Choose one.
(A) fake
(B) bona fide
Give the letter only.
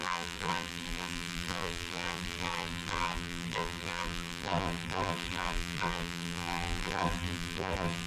A